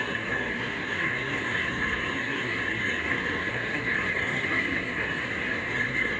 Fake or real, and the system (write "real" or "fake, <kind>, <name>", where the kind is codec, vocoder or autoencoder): fake, codec, SNAC